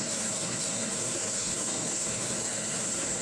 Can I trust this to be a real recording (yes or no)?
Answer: no